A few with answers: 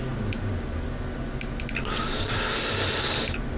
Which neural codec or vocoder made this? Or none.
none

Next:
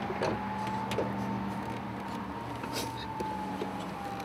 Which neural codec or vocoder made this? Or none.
none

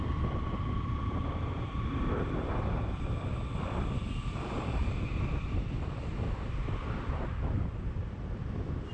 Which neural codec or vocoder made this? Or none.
vocoder, BigVGAN v2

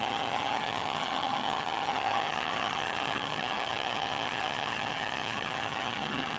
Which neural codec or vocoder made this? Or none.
vocoder, HiFi-GAN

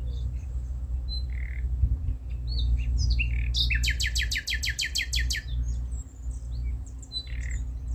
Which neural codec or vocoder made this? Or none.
none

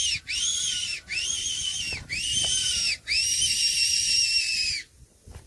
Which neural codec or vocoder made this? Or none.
none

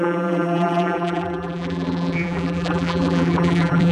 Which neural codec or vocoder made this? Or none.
vocoder, BigVGAN v2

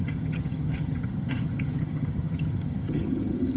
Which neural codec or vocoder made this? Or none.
vocoder, HiFi-GAN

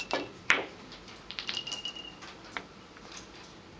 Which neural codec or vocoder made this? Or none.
vocoder, BigVGAN v2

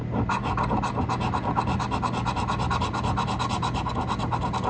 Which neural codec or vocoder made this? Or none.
none